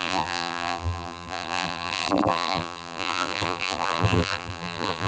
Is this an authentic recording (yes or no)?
no